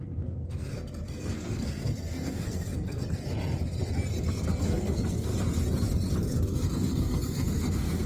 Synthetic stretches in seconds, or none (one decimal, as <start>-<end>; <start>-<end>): 0.0-3.2; 4.3-5.3; 6.2-8.1